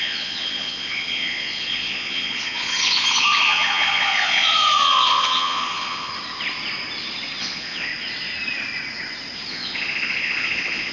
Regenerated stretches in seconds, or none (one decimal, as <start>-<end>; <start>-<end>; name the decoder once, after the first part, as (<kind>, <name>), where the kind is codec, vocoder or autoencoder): 0.0-6.1 (vocoder, Vocos); 7.4-7.9; 9.5-10.9